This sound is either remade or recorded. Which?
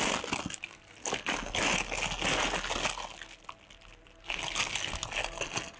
recorded